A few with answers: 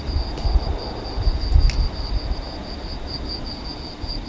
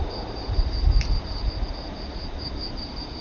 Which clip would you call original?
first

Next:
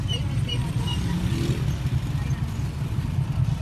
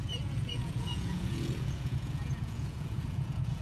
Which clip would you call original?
first